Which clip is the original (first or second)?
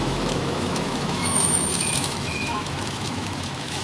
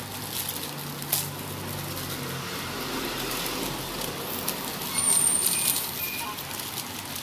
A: second